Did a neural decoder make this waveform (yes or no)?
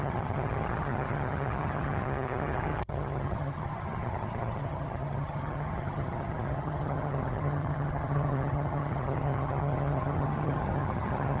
yes